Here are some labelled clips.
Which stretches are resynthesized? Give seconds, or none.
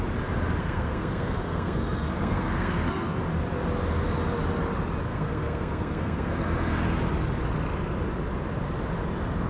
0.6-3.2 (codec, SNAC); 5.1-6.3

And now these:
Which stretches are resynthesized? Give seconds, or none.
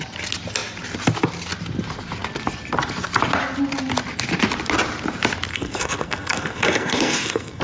5.5-7.6 (codec, SNAC)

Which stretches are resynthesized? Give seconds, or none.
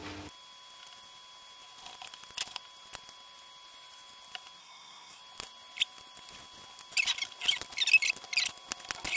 4.6-5.2 (codec, SNAC)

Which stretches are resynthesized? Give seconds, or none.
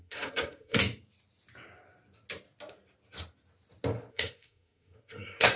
0.0-0.8 (codec, SNAC); 4.1-5.6